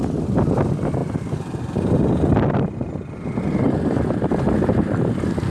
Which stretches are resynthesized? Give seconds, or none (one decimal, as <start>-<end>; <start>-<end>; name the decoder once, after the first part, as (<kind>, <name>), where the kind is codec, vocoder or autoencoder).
none